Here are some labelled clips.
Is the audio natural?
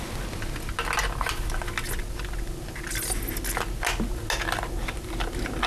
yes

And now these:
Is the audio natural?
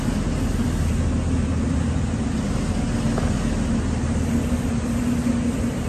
yes